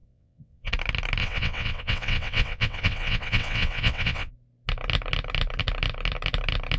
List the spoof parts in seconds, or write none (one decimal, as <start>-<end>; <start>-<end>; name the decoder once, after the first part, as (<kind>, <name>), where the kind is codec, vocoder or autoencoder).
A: 0.0-0.7 (vocoder, WaveNeXt); 1.2-4.3